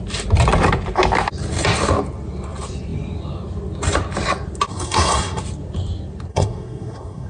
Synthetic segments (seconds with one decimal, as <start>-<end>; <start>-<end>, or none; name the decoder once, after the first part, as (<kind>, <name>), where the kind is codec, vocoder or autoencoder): 4.7-5.4 (codec, SNAC); 6.3-7.3